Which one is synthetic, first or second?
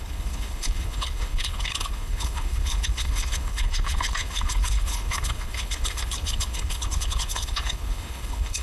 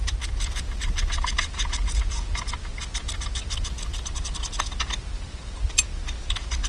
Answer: first